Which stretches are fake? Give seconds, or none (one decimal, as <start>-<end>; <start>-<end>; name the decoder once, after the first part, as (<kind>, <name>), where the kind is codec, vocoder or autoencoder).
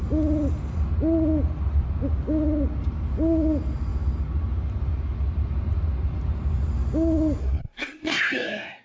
7.4-8.8 (codec, SNAC)